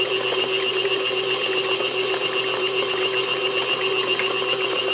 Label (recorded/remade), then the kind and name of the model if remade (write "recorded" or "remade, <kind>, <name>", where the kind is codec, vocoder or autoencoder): recorded